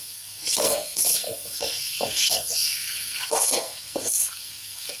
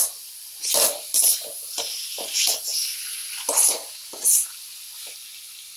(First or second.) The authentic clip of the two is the second